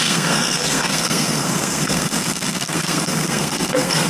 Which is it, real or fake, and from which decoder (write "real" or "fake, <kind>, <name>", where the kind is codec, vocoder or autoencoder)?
fake, codec, SNAC